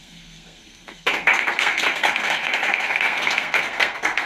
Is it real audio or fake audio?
fake